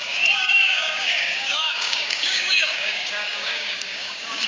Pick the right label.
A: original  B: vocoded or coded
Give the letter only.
B